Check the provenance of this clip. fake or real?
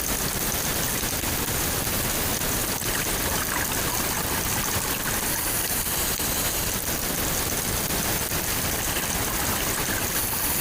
real